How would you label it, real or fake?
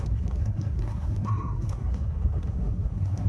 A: fake